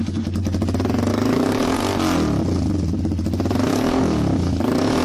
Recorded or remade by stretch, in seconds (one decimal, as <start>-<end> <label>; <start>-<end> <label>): 0.0-0.4 remade; 0.4-1.1 recorded; 1.1-1.8 remade; 1.8-3.7 recorded; 3.7-5.0 remade